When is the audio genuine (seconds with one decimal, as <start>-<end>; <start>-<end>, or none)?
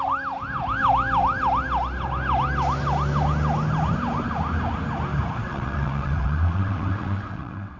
0.0-5.4